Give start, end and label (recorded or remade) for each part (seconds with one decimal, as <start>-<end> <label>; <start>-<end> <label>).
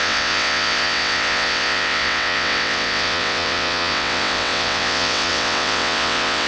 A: 0.0-6.5 remade